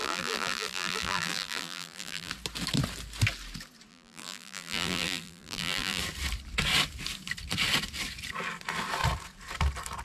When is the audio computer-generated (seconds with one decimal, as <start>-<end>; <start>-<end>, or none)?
0.0-2.3; 3.9-6.0

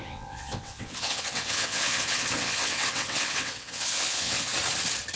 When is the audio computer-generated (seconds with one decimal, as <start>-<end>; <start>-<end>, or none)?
0.0-4.5

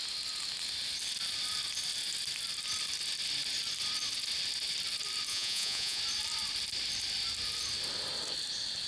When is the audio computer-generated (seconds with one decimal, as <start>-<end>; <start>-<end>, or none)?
5.3-6.0

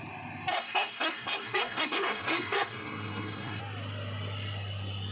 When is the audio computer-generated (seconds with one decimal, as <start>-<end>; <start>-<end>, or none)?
0.5-3.6

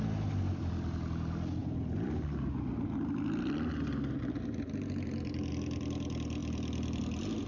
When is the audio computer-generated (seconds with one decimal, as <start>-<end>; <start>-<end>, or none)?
0.0-0.7; 1.6-5.5

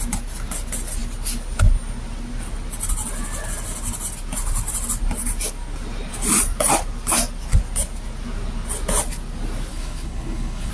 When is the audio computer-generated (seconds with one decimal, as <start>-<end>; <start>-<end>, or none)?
9.7-10.7

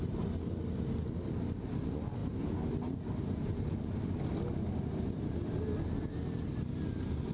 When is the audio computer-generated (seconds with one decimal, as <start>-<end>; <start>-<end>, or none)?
none